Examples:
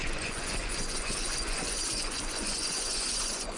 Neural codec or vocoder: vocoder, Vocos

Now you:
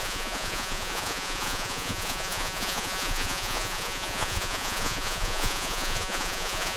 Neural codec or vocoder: vocoder, Vocos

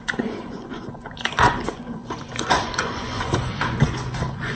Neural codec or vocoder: vocoder, Vocos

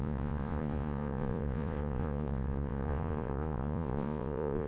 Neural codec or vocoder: vocoder, Vocos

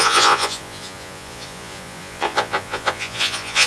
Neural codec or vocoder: vocoder, Vocos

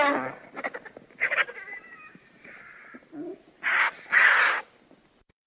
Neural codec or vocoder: none